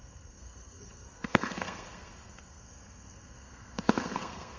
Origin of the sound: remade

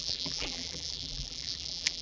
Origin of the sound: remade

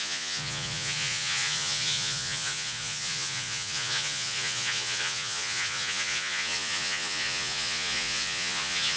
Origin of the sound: remade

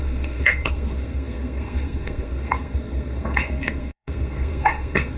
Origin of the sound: remade